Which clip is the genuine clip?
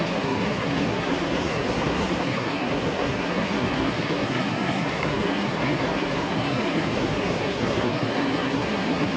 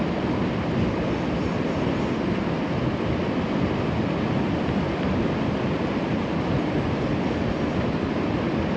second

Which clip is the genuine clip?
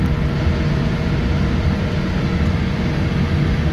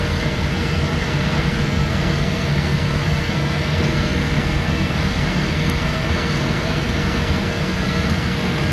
first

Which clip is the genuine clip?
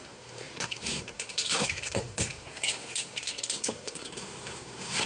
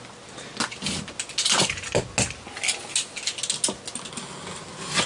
second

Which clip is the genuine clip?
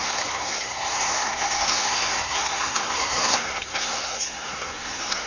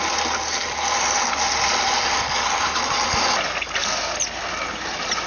second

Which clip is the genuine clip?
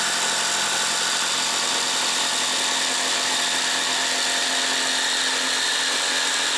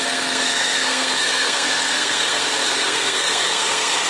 first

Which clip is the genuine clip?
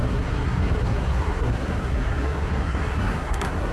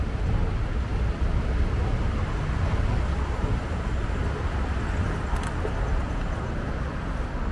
second